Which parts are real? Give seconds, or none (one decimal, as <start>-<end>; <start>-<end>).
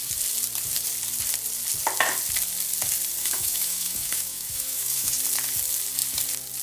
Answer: 0.0-3.2; 5.1-6.6